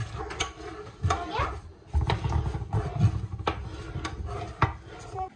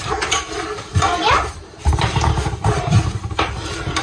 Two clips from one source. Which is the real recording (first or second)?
first